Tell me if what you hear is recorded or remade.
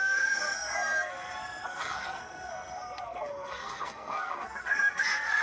remade